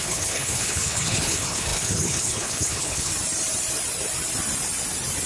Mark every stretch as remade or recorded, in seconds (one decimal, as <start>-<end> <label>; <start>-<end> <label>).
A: 0.0-3.1 remade; 3.1-5.3 recorded